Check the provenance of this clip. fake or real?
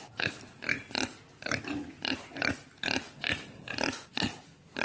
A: real